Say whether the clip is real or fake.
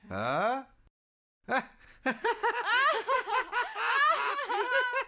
fake